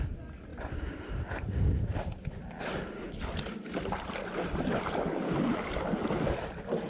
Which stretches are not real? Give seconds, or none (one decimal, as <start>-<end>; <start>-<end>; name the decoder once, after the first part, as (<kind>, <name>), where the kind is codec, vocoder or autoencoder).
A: none

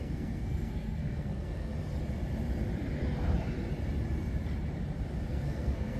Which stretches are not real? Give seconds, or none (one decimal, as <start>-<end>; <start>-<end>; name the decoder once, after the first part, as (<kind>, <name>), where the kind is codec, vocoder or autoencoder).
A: 0.0-1.7 (codec, SNAC); 5.3-6.0